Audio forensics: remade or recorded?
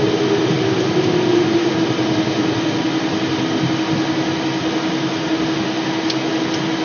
recorded